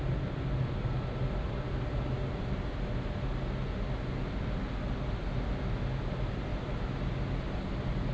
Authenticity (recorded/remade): recorded